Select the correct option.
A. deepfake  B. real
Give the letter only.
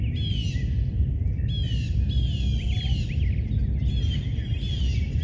B